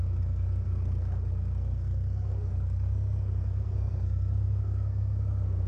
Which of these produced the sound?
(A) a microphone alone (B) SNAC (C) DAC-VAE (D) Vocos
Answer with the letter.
B